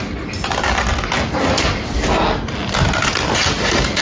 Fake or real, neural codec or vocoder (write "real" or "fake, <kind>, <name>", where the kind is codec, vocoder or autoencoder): real